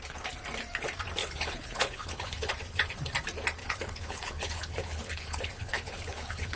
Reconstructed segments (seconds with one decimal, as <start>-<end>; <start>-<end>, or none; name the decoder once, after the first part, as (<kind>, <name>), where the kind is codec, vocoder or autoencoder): 1.2-2.5 (codec, HILCodec); 3.6-6.6